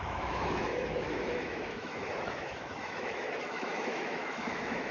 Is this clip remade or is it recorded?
remade